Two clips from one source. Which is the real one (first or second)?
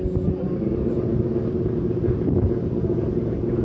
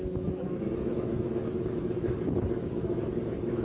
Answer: first